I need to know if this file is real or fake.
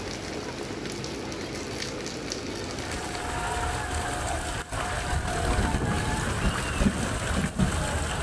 real